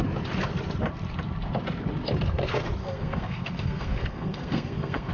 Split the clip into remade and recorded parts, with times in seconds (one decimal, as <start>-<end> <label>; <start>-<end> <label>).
0.0-2.8 recorded; 2.8-5.1 remade